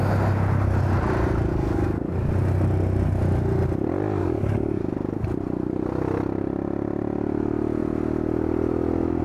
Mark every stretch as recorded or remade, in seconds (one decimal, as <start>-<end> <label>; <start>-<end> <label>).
0.0-1.5 recorded; 1.5-2.3 remade; 2.3-4.2 recorded; 4.2-4.8 remade; 4.8-9.2 recorded